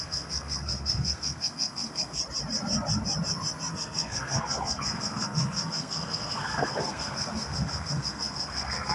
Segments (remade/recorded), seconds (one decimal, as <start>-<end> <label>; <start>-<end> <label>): 0.0-2.2 remade; 2.2-3.7 recorded; 3.7-8.9 remade